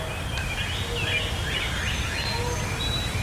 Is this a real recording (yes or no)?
yes